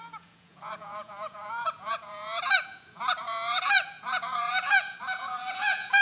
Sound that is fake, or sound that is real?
fake